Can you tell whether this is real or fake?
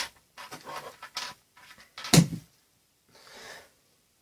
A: fake